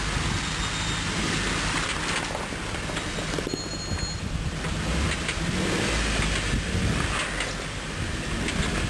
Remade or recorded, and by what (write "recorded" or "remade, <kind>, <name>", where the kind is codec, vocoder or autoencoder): recorded